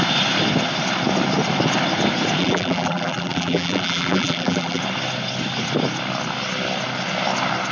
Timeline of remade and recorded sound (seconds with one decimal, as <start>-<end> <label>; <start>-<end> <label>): 0.0-2.4 recorded; 2.4-4.8 remade; 4.8-7.7 recorded